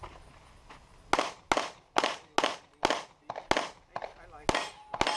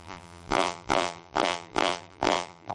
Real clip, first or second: first